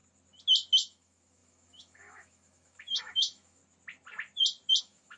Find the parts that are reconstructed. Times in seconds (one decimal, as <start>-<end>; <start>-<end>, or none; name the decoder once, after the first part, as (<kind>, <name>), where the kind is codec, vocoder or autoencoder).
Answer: 0.7-3.6 (autoencoder, DAC-VAE); 4.8-5.2